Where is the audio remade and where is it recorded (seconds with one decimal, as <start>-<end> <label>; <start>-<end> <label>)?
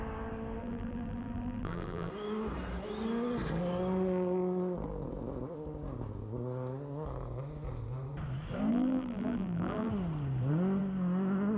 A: 0.0-0.6 recorded; 0.6-2.1 remade; 2.1-8.7 recorded; 8.7-9.9 remade; 9.9-11.6 recorded